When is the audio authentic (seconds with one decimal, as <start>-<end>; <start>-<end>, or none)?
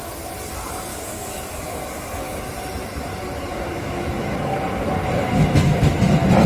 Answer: 0.0-0.9; 2.5-3.5; 4.6-6.5